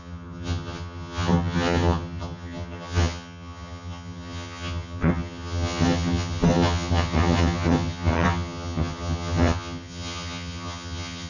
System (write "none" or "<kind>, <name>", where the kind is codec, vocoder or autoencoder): vocoder, HiFi-GAN